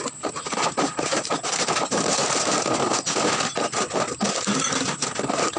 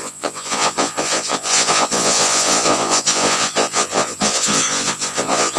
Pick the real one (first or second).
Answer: first